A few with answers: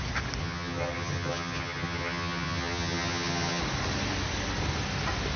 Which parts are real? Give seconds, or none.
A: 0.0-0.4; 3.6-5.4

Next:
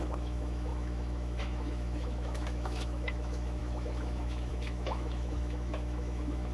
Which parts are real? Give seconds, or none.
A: none

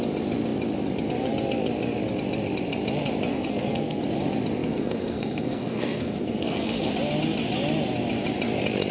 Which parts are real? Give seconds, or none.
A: 0.0-3.3; 4.0-4.6; 6.9-8.9

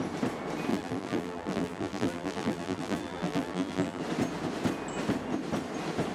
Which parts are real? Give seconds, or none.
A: 0.0-0.7; 4.0-6.1